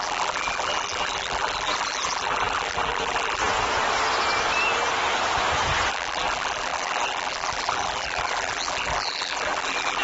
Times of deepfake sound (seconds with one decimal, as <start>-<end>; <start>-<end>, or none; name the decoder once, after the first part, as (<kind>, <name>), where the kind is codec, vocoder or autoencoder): 0.0-3.4 (vocoder, BigVGAN v2); 5.9-10.0